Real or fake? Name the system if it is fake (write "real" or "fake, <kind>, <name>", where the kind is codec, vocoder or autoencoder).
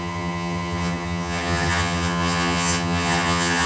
fake, vocoder, HiFi-GAN